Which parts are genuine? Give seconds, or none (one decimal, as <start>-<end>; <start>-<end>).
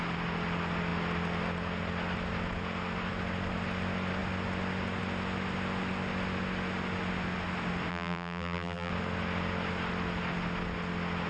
0.0-7.9; 8.9-11.3